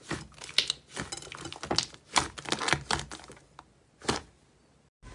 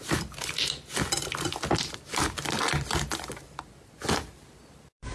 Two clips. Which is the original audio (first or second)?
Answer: first